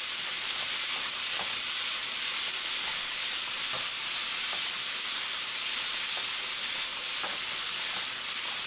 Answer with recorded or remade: recorded